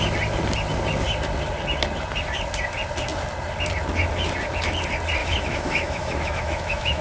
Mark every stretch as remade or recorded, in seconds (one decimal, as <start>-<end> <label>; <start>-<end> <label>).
0.0-5.2 recorded; 5.2-7.0 remade